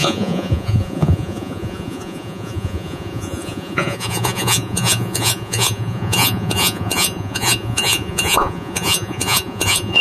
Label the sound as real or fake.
fake